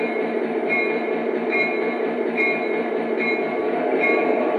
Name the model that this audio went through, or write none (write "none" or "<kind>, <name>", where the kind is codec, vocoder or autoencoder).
vocoder, BigVGAN v2